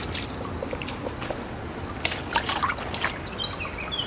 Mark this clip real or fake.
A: real